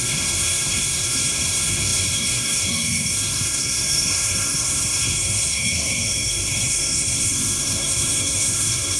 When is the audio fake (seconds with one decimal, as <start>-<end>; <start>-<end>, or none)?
0.0-9.0